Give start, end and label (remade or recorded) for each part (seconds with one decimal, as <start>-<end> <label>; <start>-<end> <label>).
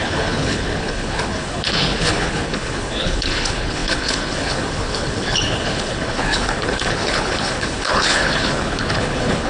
0.0-9.5 remade